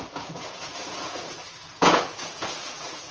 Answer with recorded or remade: remade